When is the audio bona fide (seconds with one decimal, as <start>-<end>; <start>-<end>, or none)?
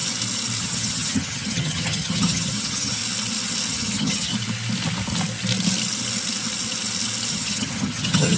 0.0-0.6; 3.0-3.7; 4.3-7.3